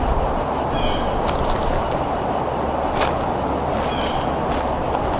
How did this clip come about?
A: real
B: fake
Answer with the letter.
A